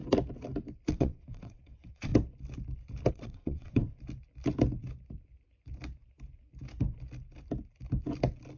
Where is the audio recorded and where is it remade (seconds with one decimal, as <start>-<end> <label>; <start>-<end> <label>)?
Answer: 0.0-0.9 recorded; 0.9-2.1 remade; 2.1-3.1 recorded; 3.1-3.8 remade; 3.8-8.6 recorded